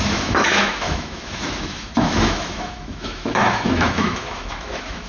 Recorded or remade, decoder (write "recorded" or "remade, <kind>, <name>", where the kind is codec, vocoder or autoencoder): remade, autoencoder, DAC-VAE